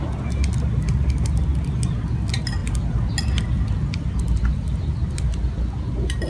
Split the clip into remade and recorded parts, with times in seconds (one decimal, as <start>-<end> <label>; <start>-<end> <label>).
0.0-6.3 recorded